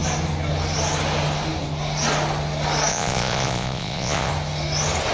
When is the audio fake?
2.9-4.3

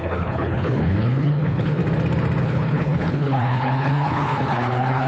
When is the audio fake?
0.0-1.8; 2.4-5.1

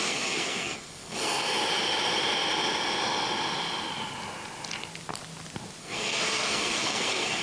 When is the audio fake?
0.0-1.6; 5.8-7.4

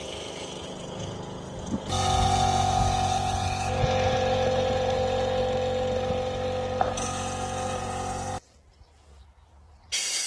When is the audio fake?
0.0-5.4; 6.9-10.3

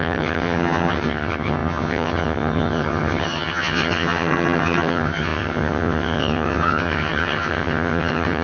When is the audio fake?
0.0-8.4